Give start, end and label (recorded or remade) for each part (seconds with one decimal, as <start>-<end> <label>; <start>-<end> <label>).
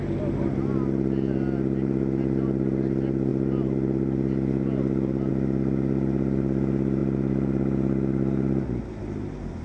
0.0-9.6 recorded